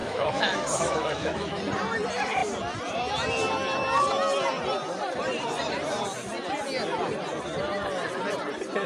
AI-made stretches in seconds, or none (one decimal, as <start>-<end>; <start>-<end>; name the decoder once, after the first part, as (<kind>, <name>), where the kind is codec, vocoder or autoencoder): 0.0-1.6 (autoencoder, DAC-VAE)

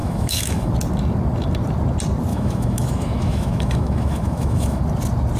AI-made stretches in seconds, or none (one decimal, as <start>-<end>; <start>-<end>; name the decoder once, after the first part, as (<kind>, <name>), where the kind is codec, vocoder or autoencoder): 0.0-0.7 (autoencoder, DAC-VAE); 2.3-4.8